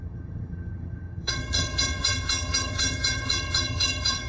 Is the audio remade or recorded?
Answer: remade